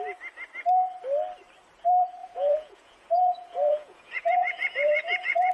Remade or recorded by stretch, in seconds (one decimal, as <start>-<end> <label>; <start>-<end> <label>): 0.0-2.2 recorded; 2.2-5.5 remade

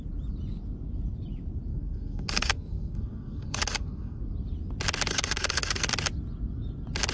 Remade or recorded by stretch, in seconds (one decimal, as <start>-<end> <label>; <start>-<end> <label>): 0.0-1.7 recorded; 1.7-4.2 remade; 4.2-5.1 recorded; 5.1-5.9 remade; 5.9-7.1 recorded

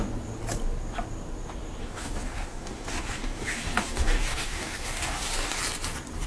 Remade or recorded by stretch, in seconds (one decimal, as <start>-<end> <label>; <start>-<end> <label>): 0.0-1.8 recorded; 1.8-5.6 remade; 5.6-6.3 recorded

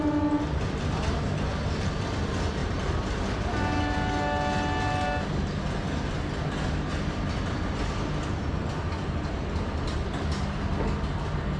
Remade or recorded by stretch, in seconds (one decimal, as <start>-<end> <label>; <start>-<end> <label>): 0.0-2.6 recorded; 2.6-3.3 remade; 3.3-11.6 recorded

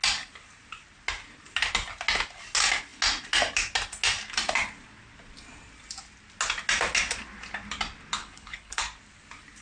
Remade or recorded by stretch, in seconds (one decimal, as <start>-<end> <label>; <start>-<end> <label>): 0.0-8.2 recorded; 8.2-8.8 remade; 8.8-9.6 recorded

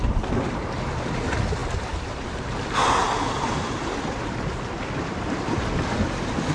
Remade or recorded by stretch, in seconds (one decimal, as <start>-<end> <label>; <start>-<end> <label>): 0.0-6.5 recorded

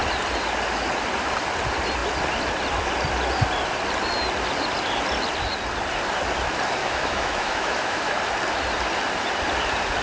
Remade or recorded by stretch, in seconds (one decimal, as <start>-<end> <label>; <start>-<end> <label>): 0.0-6.8 recorded; 6.8-8.1 remade; 8.1-10.0 recorded